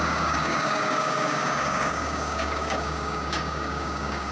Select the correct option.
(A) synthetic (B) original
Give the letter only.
A